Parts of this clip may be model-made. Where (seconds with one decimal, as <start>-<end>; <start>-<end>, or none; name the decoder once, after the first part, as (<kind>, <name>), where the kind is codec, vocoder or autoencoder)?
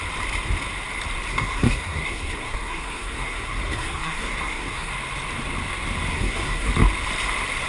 1.3-4.9 (codec, SNAC); 6.1-6.7